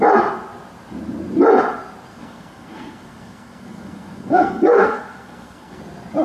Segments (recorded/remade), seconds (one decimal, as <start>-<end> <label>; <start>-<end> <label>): 0.0-2.1 recorded; 2.1-5.8 remade; 5.8-6.2 recorded